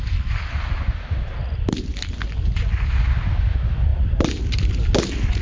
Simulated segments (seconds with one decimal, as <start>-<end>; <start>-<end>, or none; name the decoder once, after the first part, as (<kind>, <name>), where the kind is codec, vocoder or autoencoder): none